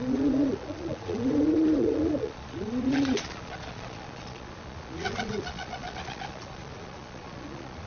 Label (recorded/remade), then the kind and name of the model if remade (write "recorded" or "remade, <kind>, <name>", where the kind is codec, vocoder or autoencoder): remade, vocoder, Vocos